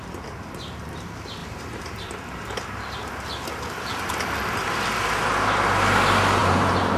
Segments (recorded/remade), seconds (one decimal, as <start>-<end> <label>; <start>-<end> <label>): 0.0-1.4 recorded; 1.4-3.1 remade; 3.1-6.4 recorded; 6.4-7.0 remade